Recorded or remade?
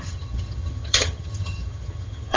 remade